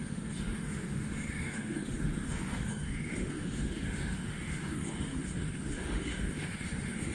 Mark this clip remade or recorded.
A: remade